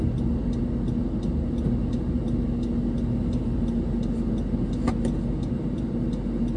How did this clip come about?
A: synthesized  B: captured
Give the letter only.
B